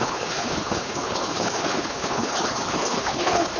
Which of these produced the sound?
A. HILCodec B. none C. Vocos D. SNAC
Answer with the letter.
A